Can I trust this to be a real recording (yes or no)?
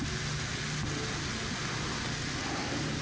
yes